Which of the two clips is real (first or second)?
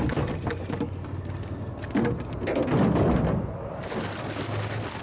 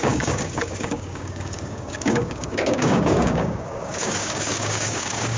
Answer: first